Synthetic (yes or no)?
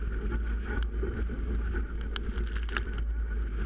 no